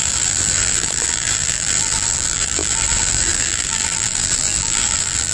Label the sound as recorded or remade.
remade